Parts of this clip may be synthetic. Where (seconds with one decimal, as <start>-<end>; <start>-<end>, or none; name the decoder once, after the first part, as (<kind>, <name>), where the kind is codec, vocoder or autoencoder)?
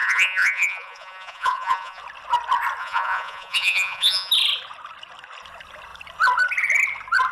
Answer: 0.0-2.0 (vocoder, Vocos); 2.8-4.3